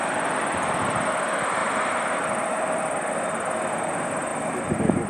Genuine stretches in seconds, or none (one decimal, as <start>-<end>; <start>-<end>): 0.0-1.6; 2.8-5.1